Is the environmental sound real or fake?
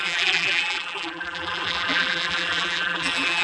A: fake